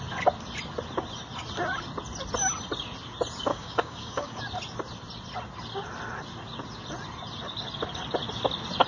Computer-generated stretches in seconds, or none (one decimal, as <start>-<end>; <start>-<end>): 3.5-4.4